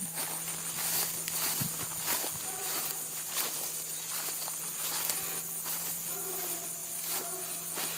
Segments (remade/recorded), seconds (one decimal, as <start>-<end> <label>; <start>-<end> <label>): 0.0-8.0 recorded